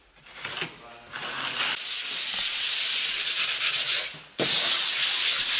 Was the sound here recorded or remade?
recorded